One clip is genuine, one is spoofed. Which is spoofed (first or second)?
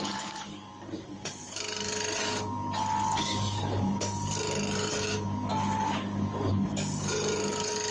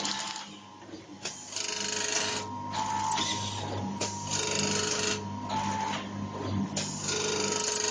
first